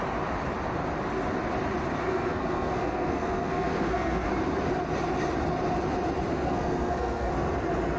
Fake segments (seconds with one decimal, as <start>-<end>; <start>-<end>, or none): 2.0-4.3; 6.3-7.3